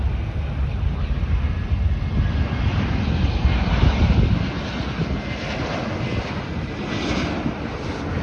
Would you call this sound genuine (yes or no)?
yes